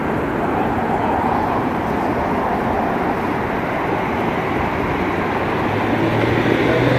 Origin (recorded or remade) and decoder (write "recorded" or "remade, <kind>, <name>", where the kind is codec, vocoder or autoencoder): recorded